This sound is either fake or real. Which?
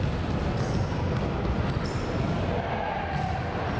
real